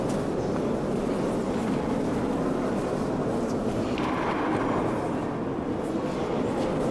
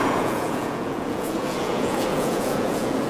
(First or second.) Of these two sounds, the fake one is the second